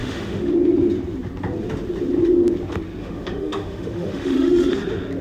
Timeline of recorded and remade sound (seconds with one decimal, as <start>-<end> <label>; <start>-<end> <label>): 0.0-0.5 remade; 0.5-3.0 recorded; 3.0-4.7 remade; 4.7-5.2 recorded